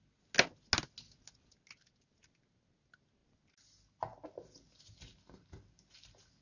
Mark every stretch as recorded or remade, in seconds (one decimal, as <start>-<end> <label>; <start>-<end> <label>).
0.0-6.4 recorded

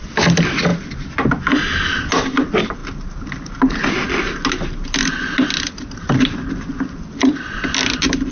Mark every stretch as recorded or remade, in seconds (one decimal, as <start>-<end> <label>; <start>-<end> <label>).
0.0-8.3 recorded

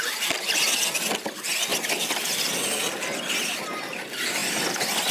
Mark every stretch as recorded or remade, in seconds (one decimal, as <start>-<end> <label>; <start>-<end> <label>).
0.0-5.1 recorded

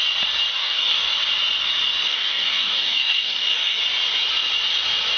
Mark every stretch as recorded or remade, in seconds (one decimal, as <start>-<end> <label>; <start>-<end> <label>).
0.0-0.5 recorded; 0.5-1.1 remade; 1.1-2.1 recorded; 2.1-3.8 remade; 3.8-5.2 recorded

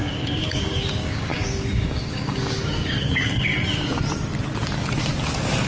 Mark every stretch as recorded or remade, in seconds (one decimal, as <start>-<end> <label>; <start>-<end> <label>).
0.0-3.5 remade; 3.5-5.7 recorded